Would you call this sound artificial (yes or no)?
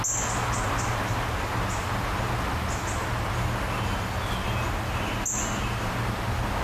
no